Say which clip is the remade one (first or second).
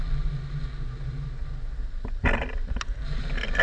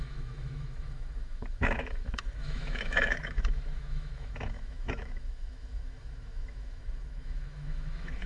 second